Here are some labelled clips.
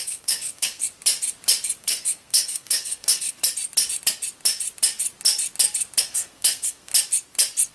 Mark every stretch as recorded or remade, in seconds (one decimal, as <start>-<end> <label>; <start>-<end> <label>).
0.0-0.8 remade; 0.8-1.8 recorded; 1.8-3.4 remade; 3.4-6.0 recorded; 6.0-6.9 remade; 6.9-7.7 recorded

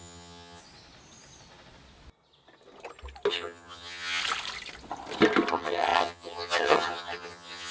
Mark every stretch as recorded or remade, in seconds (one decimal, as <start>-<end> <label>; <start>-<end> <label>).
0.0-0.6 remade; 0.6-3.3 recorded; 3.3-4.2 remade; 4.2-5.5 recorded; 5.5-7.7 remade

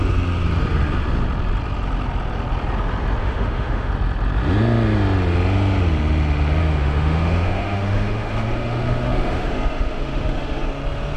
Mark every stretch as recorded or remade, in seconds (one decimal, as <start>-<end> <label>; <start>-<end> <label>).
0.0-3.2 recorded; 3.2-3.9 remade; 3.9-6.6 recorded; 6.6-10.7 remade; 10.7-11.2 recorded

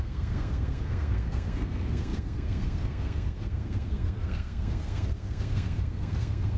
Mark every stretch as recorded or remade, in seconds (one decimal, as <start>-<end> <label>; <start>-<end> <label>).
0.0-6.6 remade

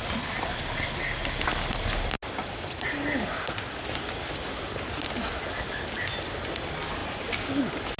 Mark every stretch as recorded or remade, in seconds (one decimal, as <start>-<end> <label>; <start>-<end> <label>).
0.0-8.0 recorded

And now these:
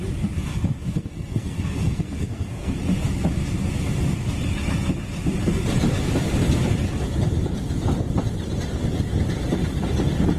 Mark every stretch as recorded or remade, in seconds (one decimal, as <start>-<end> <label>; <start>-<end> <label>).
0.0-0.5 recorded; 0.5-2.8 remade; 2.8-10.4 recorded

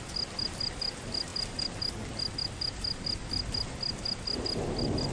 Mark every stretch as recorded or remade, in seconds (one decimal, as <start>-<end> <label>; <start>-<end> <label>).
0.0-5.1 recorded

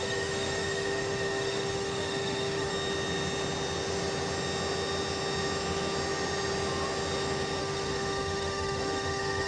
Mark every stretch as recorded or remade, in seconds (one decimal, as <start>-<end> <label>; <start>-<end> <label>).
0.0-2.7 remade; 2.7-7.6 recorded; 7.6-9.5 remade